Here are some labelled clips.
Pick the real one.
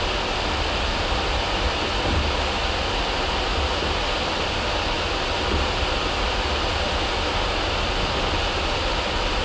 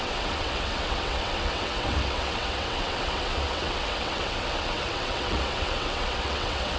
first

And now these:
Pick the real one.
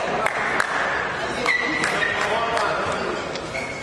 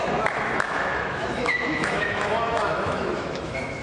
first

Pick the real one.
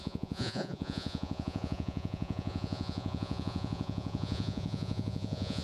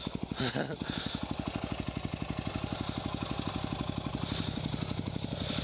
second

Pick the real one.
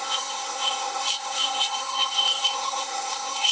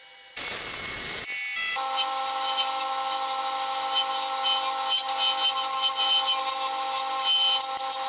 second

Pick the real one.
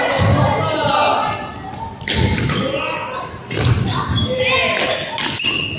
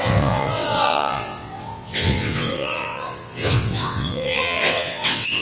first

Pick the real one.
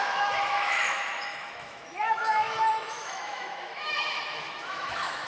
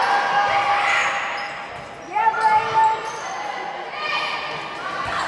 second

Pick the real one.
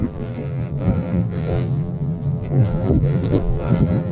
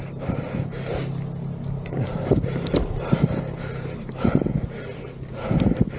second